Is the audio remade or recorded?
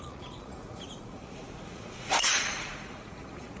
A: remade